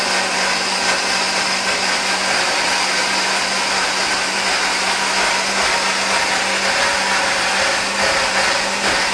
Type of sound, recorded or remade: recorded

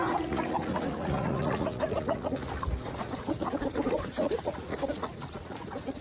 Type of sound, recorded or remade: remade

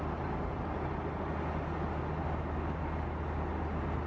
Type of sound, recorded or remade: recorded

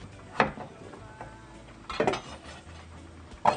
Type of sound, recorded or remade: recorded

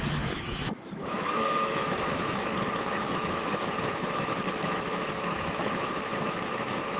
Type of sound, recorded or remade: remade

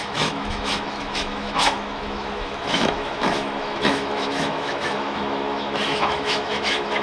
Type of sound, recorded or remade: remade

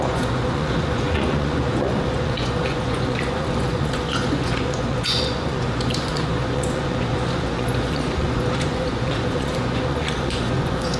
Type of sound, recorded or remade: remade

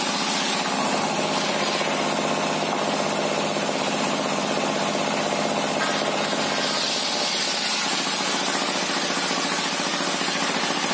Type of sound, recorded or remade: recorded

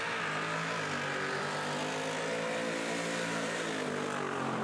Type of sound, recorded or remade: recorded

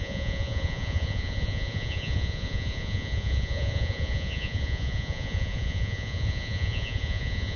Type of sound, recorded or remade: remade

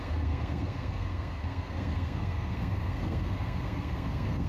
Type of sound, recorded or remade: remade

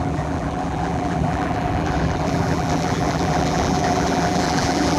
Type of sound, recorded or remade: remade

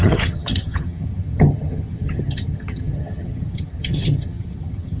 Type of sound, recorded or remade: remade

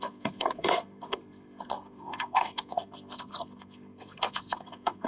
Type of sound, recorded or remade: remade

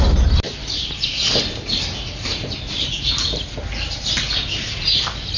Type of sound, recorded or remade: recorded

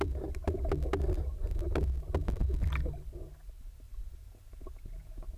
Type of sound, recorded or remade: recorded